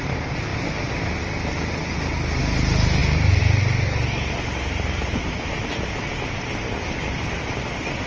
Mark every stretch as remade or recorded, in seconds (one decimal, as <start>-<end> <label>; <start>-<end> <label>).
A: 0.0-8.1 recorded